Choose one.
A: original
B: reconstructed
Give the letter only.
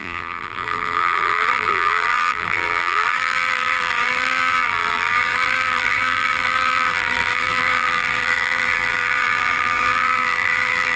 B